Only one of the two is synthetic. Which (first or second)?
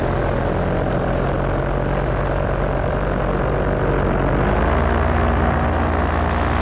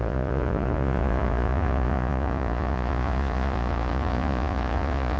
second